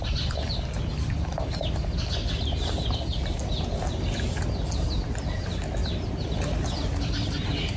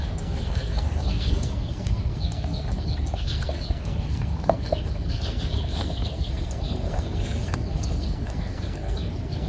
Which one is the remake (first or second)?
second